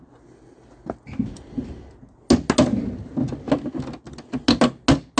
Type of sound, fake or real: real